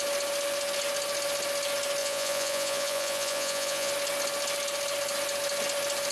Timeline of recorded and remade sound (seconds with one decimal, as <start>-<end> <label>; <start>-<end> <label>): 0.0-2.0 recorded; 2.0-3.9 remade; 3.9-6.1 recorded